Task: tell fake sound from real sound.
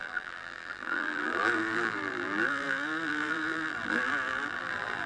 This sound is fake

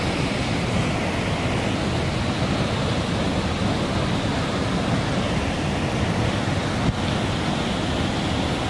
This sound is real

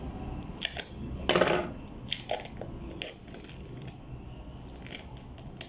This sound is real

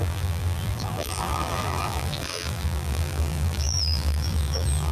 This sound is fake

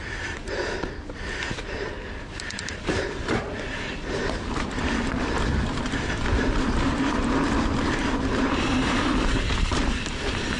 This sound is fake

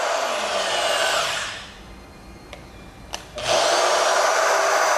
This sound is real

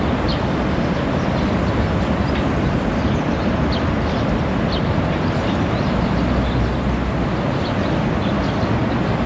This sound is real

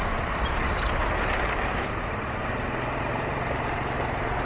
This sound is fake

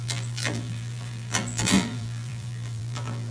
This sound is fake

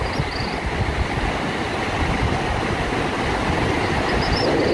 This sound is real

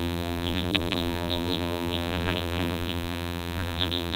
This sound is fake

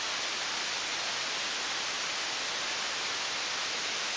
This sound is real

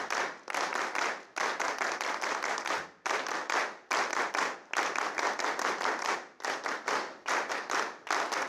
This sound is real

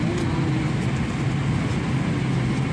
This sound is real